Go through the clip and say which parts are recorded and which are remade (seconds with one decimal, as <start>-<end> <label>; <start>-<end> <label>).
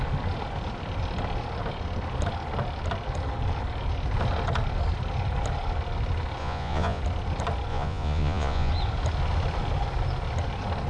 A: 0.0-6.4 recorded; 6.4-7.0 remade; 7.0-7.7 recorded; 7.7-8.7 remade; 8.7-10.9 recorded